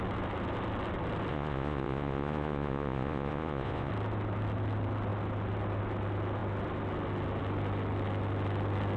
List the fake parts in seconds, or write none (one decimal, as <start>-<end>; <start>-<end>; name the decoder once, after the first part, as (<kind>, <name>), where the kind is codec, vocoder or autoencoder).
1.3-3.9 (vocoder, Vocos)